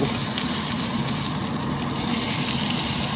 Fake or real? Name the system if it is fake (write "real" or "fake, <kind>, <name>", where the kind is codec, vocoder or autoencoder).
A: real